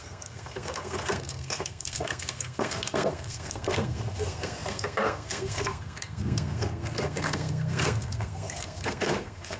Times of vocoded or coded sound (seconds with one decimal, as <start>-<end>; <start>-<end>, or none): 0.0-9.6